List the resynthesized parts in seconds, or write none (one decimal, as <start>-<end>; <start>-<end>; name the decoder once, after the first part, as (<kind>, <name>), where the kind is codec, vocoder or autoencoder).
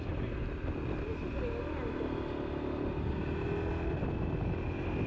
none